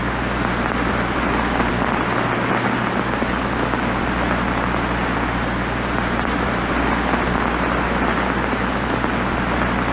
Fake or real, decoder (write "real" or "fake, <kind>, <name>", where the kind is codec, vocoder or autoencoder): real